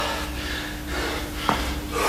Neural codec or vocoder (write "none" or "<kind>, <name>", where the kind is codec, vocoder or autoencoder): none